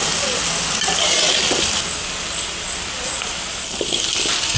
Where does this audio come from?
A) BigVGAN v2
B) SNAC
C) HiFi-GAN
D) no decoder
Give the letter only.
D